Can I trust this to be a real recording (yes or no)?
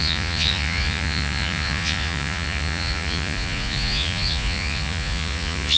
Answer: no